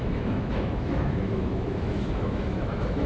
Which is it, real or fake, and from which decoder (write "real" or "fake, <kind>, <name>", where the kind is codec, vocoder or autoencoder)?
fake, autoencoder, DAC-VAE